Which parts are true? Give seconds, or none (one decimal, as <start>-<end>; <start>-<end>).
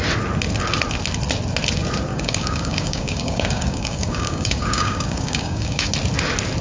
0.0-2.1; 5.9-6.6